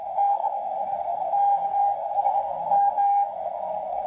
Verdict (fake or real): fake